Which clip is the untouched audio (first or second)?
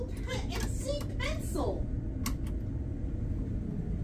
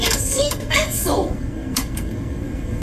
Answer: first